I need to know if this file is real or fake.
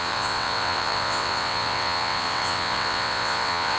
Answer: fake